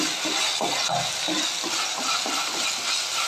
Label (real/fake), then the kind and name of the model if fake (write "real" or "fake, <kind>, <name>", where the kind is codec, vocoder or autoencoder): real